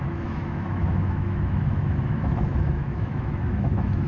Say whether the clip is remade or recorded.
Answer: remade